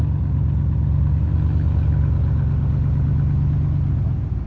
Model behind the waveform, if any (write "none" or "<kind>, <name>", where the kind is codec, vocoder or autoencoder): none